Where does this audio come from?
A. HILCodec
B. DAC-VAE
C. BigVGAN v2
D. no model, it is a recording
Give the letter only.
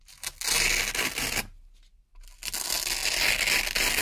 D